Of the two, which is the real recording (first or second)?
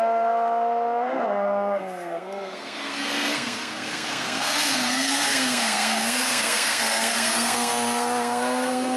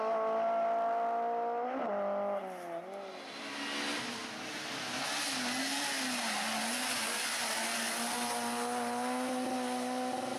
second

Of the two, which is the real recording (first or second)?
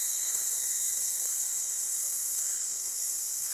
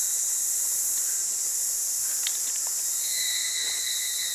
second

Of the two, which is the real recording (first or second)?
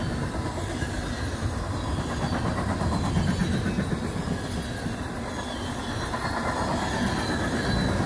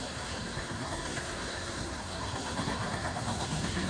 first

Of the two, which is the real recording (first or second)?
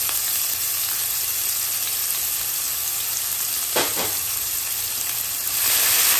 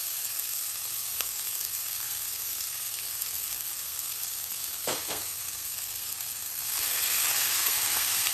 first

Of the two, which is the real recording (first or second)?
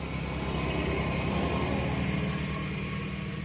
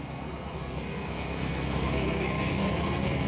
first